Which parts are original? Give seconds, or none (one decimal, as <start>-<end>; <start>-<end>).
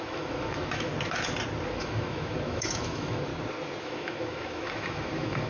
0.9-1.7; 3.3-3.8